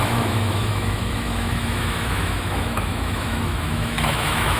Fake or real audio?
fake